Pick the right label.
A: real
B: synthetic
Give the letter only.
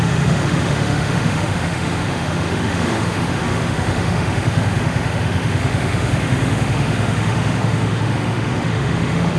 B